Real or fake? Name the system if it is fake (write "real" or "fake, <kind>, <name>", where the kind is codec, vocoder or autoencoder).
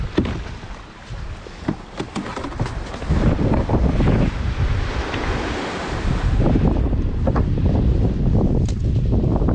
real